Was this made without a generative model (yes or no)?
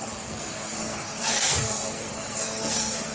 no